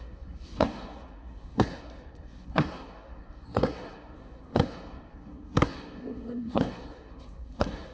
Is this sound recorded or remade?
remade